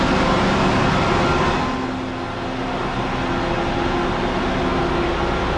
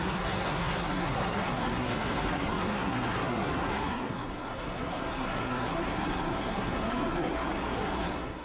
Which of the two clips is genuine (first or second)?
first